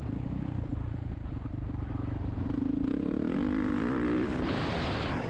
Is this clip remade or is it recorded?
remade